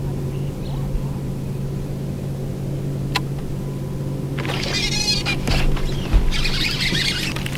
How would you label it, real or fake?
real